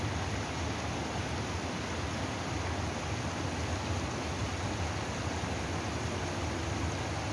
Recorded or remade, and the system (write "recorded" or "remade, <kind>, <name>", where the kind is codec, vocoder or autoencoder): recorded